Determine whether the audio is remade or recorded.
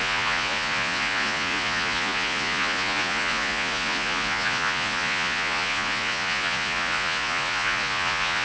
remade